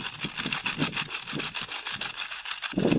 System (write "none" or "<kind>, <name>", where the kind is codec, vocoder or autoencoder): none